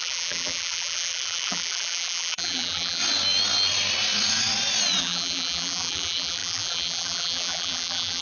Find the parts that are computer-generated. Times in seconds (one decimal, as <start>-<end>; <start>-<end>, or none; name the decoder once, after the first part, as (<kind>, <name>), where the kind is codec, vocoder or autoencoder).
0.0-3.0 (vocoder, BigVGAN v2); 5.0-8.2